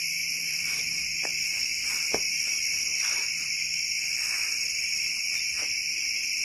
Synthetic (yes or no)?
yes